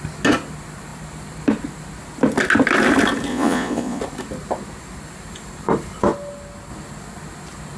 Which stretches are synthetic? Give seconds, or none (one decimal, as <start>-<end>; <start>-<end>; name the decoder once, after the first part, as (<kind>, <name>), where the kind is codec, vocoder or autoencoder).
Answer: 3.3-4.0 (vocoder, Vocos)